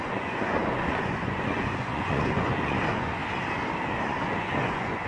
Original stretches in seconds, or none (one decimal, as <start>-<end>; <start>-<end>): 3.2-3.9